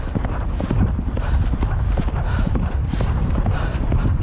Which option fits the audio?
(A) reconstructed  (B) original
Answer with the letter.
A